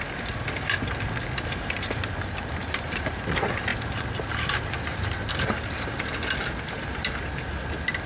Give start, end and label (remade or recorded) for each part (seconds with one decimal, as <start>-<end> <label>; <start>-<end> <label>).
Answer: 0.0-8.1 recorded